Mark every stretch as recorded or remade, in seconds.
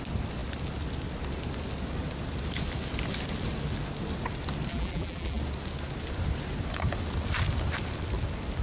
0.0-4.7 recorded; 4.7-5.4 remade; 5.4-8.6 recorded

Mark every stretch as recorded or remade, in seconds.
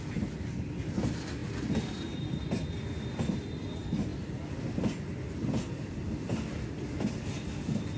0.0-8.0 recorded